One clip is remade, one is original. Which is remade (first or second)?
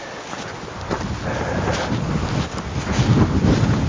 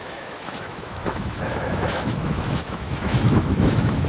second